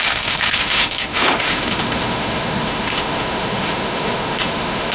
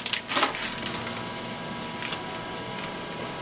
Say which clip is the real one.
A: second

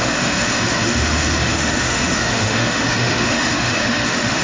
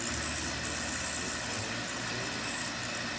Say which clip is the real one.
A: second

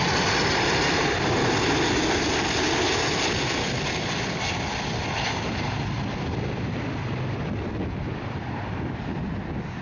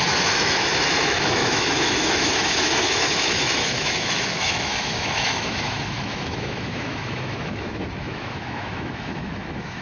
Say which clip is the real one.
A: first